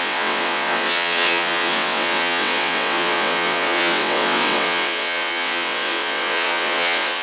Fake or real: fake